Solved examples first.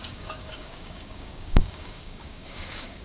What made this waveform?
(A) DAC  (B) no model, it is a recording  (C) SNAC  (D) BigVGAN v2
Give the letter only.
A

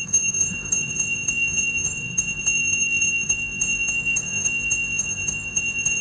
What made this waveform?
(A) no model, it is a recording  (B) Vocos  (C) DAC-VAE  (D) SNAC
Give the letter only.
C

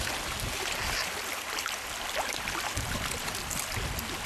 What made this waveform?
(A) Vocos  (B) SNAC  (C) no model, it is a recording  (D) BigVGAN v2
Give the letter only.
C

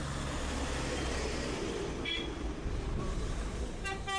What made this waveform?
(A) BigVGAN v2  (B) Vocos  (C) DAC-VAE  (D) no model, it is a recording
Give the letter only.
D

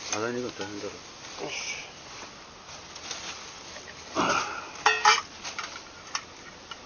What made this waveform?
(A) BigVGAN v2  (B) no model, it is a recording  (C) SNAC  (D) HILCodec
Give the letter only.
B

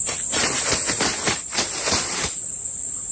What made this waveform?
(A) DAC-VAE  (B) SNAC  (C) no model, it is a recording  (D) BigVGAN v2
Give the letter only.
D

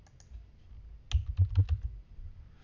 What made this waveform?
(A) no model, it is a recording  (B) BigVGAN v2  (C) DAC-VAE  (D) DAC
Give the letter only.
A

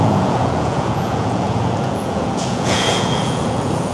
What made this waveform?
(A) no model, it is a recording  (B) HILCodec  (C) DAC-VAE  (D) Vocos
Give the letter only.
D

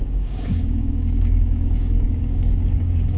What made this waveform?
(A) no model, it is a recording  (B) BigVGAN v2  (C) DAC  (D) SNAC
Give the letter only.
C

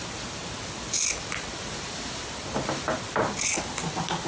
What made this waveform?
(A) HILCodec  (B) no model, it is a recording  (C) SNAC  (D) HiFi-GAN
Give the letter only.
B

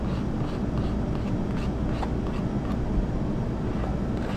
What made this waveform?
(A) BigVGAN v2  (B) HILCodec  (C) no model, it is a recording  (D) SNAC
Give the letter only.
C